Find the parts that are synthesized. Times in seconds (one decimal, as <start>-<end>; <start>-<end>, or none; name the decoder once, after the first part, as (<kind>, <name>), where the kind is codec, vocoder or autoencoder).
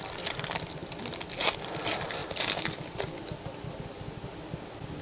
none